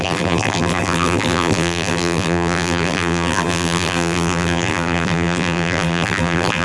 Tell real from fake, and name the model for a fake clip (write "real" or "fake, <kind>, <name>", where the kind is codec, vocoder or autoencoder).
fake, vocoder, BigVGAN v2